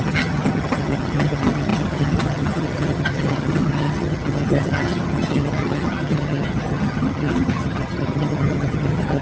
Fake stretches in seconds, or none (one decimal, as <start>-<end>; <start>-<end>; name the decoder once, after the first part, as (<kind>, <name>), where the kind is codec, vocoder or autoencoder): 0.0-9.2 (vocoder, HiFi-GAN)